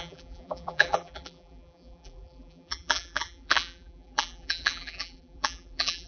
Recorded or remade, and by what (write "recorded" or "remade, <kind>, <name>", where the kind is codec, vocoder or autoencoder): remade, vocoder, BigVGAN v2